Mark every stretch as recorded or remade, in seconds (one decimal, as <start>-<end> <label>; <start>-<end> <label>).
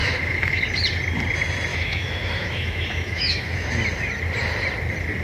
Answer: 0.0-0.6 remade; 0.6-1.7 recorded; 1.7-3.7 remade; 3.7-5.2 recorded